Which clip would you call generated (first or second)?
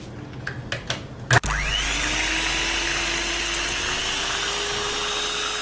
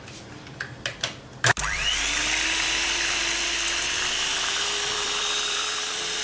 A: second